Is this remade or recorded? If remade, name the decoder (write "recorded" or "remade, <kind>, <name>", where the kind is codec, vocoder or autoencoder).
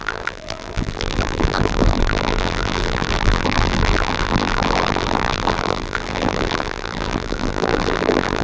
remade, vocoder, BigVGAN v2